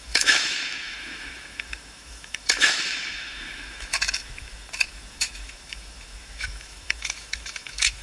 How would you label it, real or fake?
fake